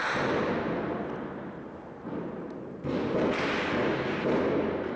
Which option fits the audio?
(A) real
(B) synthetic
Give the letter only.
A